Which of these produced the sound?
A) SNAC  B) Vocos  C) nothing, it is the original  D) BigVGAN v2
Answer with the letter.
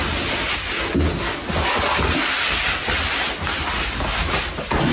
C